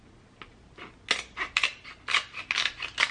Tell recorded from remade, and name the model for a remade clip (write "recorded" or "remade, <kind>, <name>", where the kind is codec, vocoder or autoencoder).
recorded